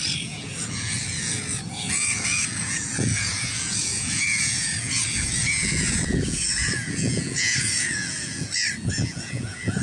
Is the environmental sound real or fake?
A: fake